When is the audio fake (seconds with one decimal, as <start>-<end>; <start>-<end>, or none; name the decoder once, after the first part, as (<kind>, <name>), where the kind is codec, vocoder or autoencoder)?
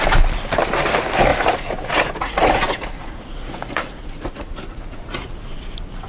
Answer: 1.3-5.0 (vocoder, Vocos)